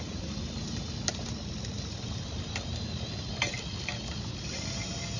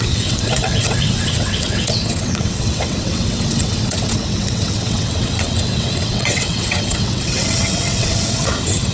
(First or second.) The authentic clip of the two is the first